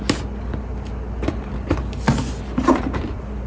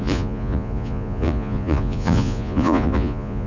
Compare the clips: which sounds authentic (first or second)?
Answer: first